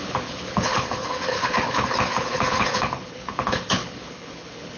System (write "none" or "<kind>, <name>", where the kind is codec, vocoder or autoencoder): codec, HILCodec